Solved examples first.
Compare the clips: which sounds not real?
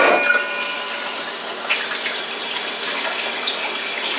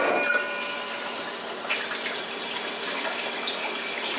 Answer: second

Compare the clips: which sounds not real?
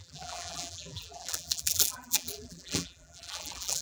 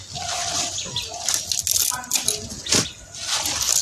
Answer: first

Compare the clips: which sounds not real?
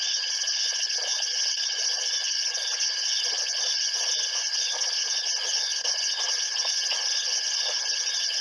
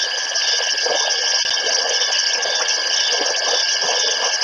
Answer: first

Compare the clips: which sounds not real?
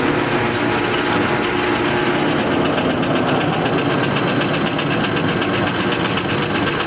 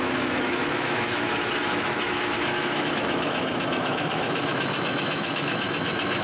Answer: second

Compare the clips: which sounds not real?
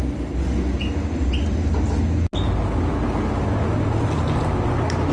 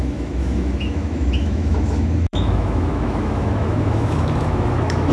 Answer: second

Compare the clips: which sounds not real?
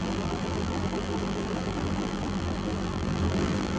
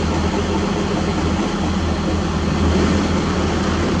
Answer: first